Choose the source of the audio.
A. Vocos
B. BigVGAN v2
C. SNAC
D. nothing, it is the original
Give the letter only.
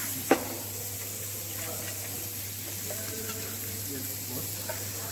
D